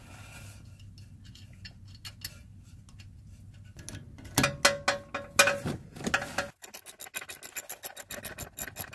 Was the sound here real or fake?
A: real